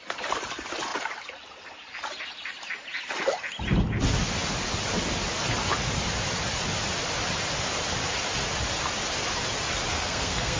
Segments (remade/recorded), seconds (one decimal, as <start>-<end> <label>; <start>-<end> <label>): 0.0-9.9 recorded; 9.9-10.6 remade